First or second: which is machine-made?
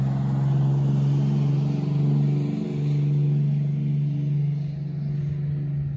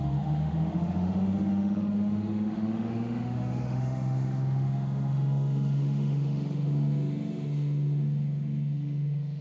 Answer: second